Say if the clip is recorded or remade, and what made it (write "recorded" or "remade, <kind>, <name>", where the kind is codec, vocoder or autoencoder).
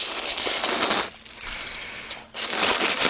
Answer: recorded